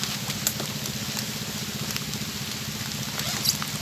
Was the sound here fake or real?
real